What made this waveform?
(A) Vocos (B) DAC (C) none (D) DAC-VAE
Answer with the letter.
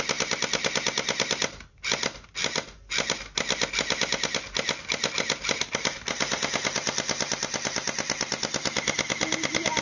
C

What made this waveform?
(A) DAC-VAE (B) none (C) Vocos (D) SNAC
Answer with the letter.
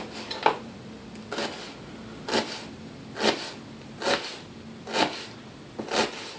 B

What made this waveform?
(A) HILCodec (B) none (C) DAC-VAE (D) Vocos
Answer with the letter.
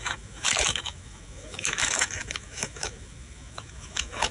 C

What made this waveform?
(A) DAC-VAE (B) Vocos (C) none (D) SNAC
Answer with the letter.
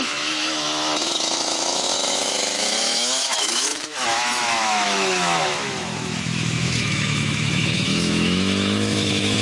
A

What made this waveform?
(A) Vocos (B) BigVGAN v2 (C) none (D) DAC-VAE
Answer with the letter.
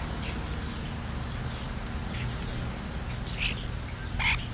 C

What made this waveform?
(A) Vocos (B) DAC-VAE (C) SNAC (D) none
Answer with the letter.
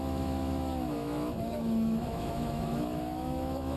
B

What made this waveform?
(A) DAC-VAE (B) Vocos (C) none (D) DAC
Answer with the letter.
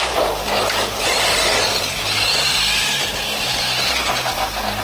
C